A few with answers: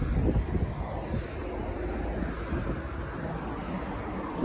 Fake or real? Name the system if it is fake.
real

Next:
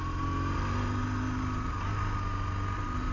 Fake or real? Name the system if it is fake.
real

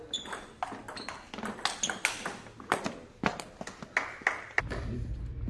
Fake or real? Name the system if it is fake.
real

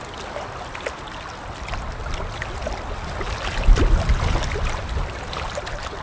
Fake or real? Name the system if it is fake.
real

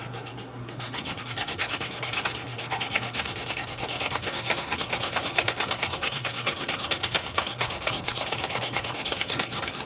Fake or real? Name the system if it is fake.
fake, codec, SNAC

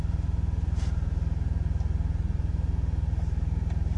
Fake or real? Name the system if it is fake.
real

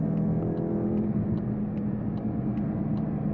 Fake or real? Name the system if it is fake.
real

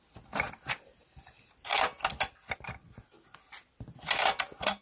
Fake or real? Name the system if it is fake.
real